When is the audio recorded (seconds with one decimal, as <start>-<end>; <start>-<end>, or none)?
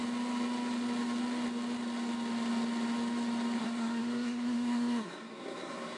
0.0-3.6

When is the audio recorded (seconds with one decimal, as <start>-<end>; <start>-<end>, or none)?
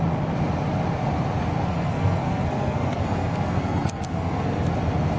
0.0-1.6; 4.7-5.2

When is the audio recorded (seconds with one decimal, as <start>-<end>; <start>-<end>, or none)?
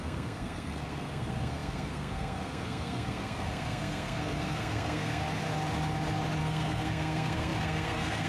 5.2-6.4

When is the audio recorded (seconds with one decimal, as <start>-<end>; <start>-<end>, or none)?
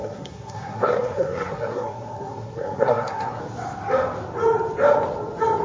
3.4-5.6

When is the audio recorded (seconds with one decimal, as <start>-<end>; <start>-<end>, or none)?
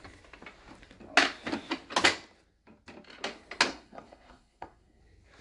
0.0-3.7; 5.0-5.4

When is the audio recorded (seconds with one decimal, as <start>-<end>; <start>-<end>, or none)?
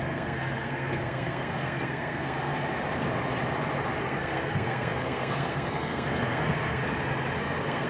2.5-4.0; 6.8-7.4